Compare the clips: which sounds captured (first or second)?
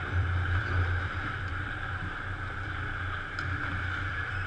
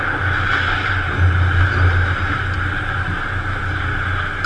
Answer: second